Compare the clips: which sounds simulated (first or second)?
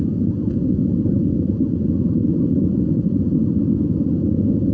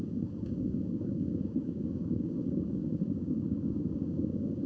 second